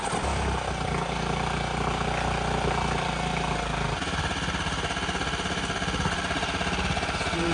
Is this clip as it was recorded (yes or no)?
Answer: yes